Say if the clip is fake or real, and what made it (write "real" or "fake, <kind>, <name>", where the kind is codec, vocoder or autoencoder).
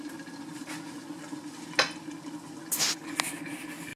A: real